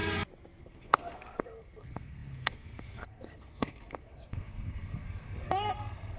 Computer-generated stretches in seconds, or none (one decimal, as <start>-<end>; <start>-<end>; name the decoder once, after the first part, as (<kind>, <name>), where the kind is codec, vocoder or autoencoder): 0.6-6.2 (codec, SNAC)